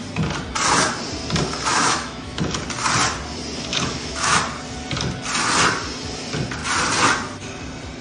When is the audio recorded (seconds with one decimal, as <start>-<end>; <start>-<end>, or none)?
0.0-1.7; 2.4-3.7; 4.4-8.0